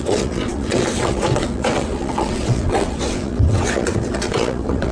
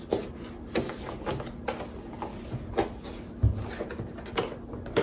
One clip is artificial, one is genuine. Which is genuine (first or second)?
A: second